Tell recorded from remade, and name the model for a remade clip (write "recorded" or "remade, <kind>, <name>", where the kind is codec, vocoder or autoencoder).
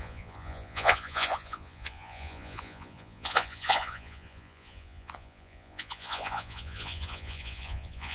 remade, vocoder, Vocos